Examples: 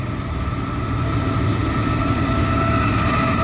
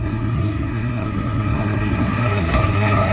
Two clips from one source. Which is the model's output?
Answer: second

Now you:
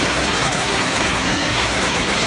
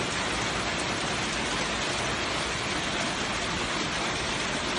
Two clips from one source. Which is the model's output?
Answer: first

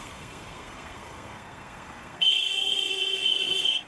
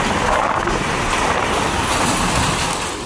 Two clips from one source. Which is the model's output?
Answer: first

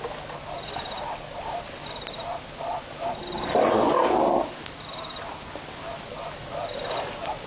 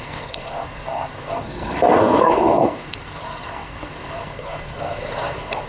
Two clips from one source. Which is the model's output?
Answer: second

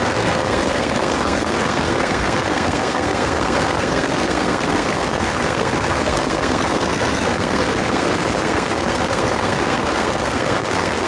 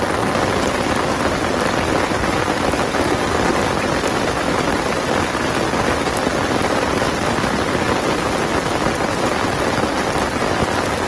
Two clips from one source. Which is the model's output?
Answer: first